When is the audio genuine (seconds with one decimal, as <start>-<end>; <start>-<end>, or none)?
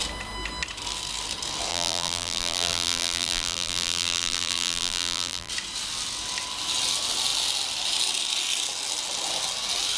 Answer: 0.0-1.7; 5.5-10.0